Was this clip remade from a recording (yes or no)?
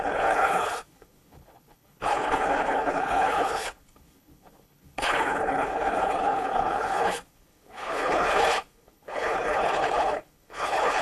yes